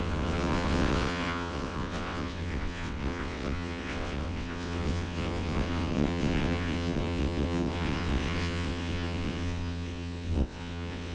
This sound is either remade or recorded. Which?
remade